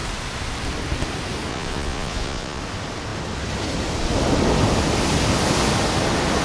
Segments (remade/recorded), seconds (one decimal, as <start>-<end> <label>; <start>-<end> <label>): 0.0-1.5 recorded; 1.5-2.6 remade; 2.6-6.4 recorded